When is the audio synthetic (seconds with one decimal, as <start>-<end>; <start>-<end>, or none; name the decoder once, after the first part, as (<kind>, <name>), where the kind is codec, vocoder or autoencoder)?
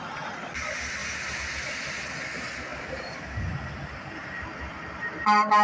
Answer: none